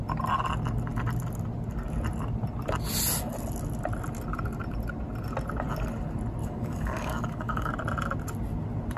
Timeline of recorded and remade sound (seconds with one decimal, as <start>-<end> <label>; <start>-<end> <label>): 0.0-6.4 recorded; 6.4-7.7 remade; 7.7-9.0 recorded

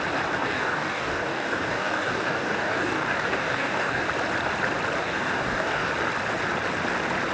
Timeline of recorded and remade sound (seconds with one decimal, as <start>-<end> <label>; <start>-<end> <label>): 0.0-0.4 recorded; 0.4-4.0 remade; 4.0-5.0 recorded; 5.0-5.9 remade; 5.9-7.3 recorded

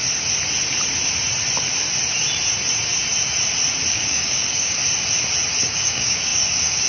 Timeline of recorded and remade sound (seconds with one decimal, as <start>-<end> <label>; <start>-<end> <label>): 0.0-3.9 recorded; 3.9-4.8 remade; 4.8-5.6 recorded; 5.6-6.9 remade